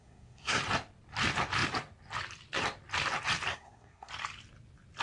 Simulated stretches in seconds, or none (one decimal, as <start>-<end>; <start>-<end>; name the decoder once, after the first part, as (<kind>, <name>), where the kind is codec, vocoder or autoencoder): 0.0-0.6 (codec, SNAC); 3.5-4.1